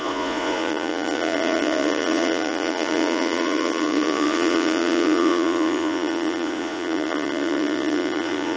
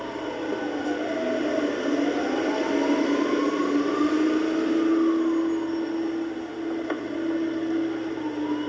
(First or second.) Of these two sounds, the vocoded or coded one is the first